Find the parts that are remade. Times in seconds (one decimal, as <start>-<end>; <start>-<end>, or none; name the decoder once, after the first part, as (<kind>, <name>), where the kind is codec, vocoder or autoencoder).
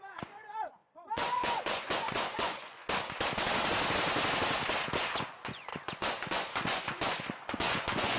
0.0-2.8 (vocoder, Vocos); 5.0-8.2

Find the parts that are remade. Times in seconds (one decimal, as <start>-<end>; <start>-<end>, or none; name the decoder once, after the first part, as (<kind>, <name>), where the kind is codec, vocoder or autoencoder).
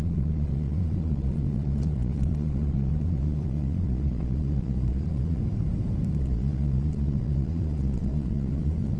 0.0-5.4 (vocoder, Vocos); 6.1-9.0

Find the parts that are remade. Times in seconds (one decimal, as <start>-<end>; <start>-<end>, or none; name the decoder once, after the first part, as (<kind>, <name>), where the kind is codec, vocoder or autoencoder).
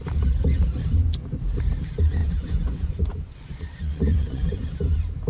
2.2-4.7 (vocoder, Vocos)